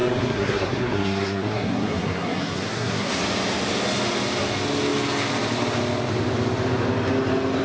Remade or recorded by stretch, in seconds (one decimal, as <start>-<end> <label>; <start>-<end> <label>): 0.0-3.2 remade; 3.2-7.6 recorded